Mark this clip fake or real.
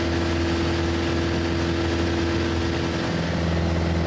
real